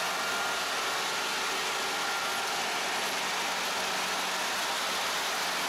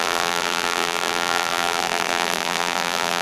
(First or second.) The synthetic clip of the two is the second